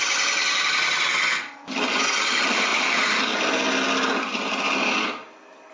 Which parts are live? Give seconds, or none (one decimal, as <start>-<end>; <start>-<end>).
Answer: 0.0-5.7

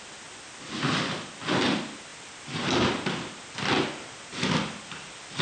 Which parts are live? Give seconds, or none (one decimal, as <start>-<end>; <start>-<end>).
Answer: 0.0-5.4